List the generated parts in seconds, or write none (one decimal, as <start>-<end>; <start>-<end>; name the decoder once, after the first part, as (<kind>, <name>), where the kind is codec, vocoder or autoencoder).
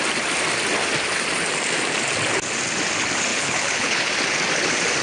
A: 3.3-4.1 (codec, HILCodec)